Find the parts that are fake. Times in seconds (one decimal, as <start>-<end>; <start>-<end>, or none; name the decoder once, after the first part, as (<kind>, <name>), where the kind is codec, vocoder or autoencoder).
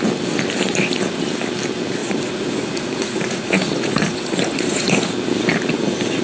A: 2.0-5.1 (vocoder, Vocos)